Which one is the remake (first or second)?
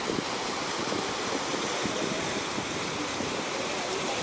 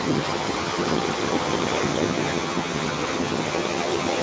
second